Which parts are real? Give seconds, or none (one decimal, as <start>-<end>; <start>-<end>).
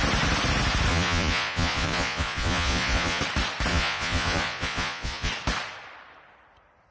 0.0-0.9; 3.2-3.7; 5.3-6.9